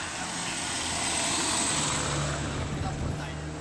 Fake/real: real